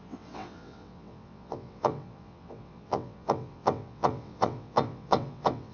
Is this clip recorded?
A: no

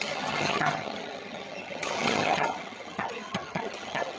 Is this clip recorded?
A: no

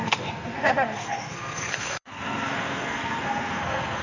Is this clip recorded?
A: no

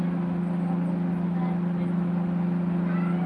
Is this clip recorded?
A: yes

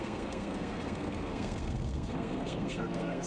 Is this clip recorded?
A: no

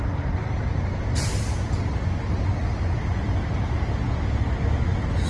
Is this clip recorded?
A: yes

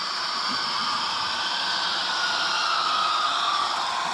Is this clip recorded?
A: yes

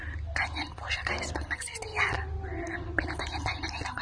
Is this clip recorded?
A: yes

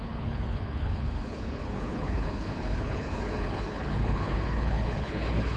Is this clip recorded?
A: no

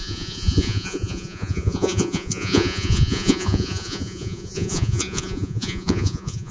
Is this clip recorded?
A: no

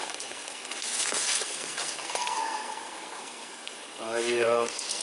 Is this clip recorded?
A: no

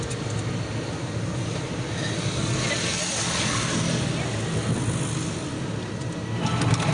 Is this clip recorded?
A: yes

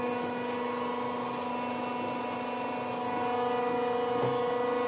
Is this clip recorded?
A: yes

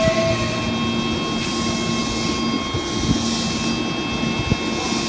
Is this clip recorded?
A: yes